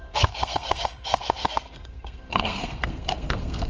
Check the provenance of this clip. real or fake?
fake